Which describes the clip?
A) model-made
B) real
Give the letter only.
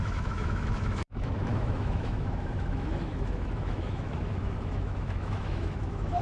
A